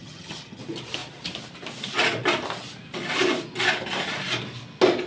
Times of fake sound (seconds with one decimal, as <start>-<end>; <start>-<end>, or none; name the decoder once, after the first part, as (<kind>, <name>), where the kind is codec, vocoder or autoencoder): 0.0-0.6 (vocoder, HiFi-GAN)